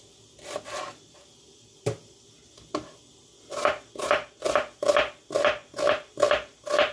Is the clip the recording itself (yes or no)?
yes